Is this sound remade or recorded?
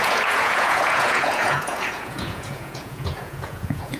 remade